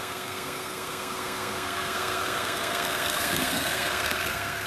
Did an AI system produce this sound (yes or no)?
yes